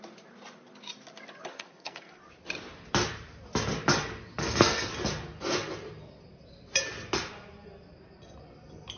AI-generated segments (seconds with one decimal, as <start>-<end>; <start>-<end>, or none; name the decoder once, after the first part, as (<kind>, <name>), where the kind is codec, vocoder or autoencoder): 1.5-2.2 (codec, SNAC); 4.4-4.9

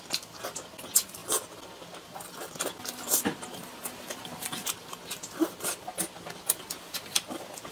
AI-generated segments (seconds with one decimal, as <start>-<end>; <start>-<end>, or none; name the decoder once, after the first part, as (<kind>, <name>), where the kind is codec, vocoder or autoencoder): none

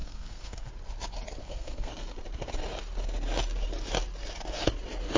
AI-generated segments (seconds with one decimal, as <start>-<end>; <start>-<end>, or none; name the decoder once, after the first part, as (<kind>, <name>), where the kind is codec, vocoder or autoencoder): 0.0-0.7 (codec, SNAC); 1.4-1.9

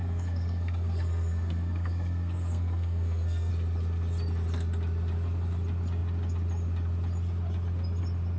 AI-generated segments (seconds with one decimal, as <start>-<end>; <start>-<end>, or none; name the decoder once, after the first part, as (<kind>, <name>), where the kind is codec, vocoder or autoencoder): 0.0-3.5 (codec, SNAC)

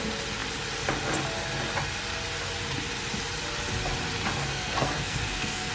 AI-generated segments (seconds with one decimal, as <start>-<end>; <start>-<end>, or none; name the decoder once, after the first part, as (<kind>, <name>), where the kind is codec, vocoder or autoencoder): 4.4-5.7 (codec, SNAC)

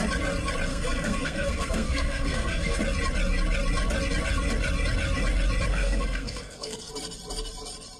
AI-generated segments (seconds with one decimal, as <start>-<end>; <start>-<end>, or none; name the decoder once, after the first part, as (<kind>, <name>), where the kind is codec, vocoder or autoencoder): 0.7-2.8 (codec, SNAC); 5.7-6.9

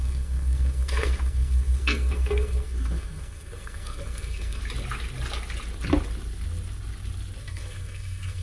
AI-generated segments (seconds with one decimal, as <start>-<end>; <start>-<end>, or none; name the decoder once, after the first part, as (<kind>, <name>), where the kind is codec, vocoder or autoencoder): 0.0-4.6 (codec, SNAC); 7.4-8.4